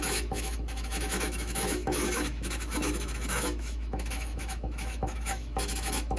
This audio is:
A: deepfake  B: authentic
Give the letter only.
A